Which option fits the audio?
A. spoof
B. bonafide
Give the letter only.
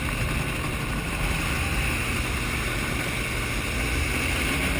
B